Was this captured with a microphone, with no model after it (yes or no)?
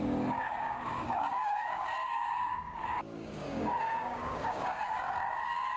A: no